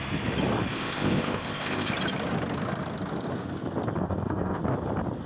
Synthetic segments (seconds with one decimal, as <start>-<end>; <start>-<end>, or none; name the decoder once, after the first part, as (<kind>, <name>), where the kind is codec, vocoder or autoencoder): 0.7-1.9 (codec, ZipCodec); 4.0-4.6